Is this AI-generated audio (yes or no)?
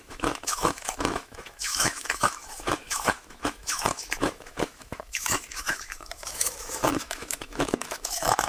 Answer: yes